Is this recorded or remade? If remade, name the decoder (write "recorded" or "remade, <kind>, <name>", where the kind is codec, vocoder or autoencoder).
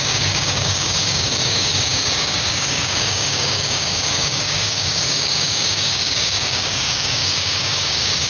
remade, codec, DAC